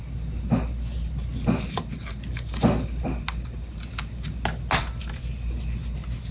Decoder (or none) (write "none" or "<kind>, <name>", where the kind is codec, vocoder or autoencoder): none